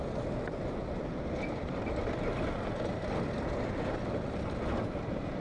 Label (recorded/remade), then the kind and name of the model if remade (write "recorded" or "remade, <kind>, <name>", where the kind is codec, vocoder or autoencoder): recorded